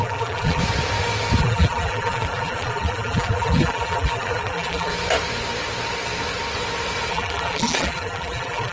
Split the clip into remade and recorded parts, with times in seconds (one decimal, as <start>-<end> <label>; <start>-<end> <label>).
0.0-0.6 remade; 0.6-1.4 recorded; 1.4-4.9 remade; 4.9-7.1 recorded; 7.1-8.7 remade

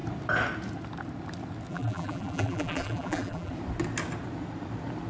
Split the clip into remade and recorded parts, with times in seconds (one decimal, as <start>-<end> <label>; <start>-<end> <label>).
0.0-1.7 recorded; 1.7-3.5 remade; 3.5-5.1 recorded

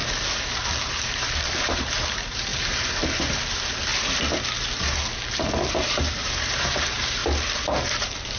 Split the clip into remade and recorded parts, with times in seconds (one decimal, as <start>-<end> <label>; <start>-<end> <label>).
0.0-0.9 recorded; 0.9-3.9 remade; 3.9-5.5 recorded; 5.5-7.2 remade; 7.2-7.7 recorded; 7.7-8.4 remade

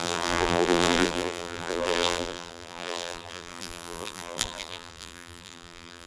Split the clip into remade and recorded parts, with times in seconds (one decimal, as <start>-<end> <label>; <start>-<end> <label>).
0.0-6.1 remade

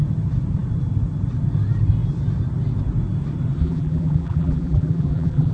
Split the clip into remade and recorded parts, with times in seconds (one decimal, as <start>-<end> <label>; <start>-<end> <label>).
0.0-3.6 recorded; 3.6-5.5 remade